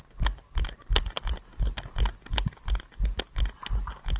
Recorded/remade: recorded